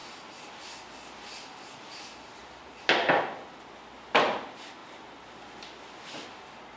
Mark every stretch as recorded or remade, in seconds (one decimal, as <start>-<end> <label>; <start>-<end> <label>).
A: 0.0-0.6 remade; 0.6-4.8 recorded; 4.8-5.6 remade; 5.6-6.8 recorded